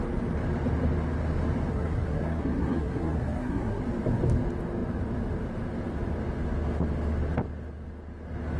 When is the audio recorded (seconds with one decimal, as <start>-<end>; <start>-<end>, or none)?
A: 0.0-1.7; 3.8-8.6